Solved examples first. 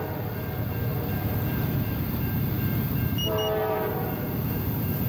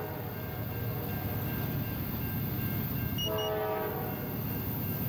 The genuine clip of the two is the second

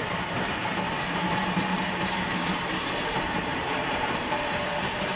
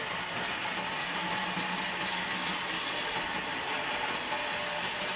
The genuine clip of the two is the second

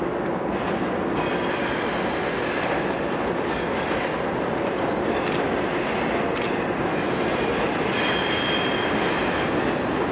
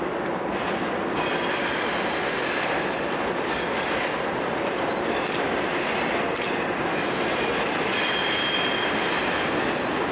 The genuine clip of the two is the first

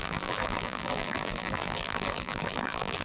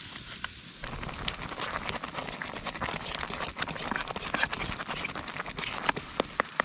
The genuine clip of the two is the second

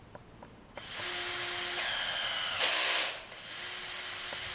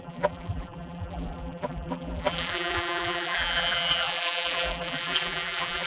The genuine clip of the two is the first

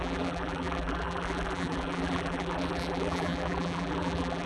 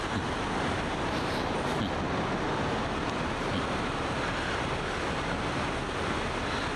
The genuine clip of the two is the second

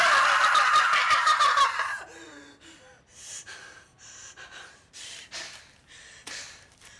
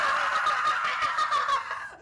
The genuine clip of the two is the second